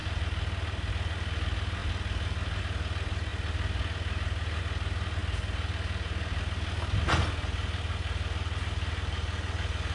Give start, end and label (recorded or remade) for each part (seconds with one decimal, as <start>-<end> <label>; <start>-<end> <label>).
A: 0.0-9.9 recorded